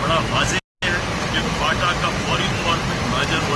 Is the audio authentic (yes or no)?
yes